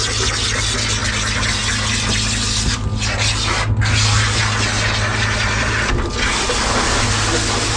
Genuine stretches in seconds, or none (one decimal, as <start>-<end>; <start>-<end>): 0.0-5.1; 6.0-7.8